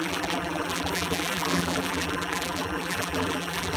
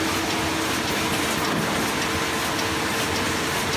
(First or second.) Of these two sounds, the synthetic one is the first